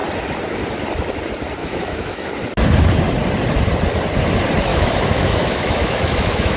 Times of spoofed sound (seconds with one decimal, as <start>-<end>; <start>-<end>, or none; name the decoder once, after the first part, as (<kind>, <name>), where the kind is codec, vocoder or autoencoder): 1.6-2.3 (autoencoder, DAC-VAE); 4.7-6.6